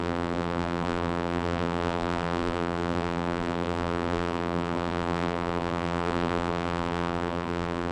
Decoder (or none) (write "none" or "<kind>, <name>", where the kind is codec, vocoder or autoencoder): vocoder, BigVGAN v2